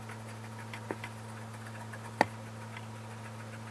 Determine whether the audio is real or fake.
real